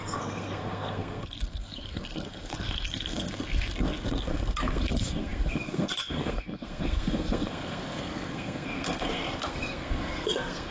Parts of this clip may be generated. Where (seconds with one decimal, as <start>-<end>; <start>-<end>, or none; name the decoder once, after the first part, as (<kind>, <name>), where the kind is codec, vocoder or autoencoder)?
0.0-10.7 (codec, SNAC)